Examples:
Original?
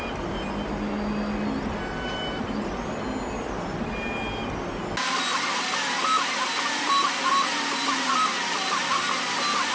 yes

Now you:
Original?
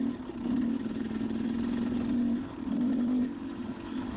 yes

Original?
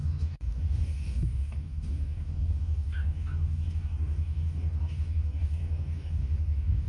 no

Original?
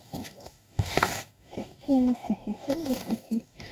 no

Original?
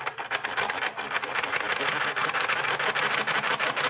yes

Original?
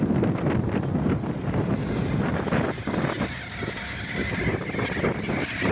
yes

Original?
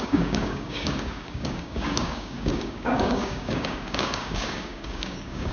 no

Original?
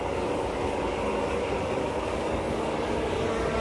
no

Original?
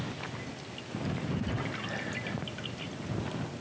yes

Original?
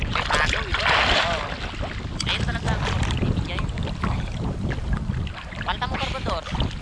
yes